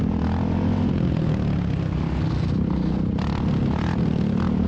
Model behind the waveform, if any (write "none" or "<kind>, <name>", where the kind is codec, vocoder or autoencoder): none